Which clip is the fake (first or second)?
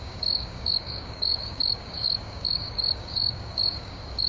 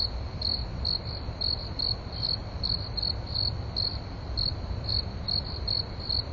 first